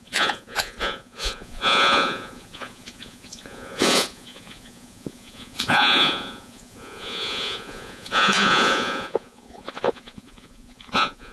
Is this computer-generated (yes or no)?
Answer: yes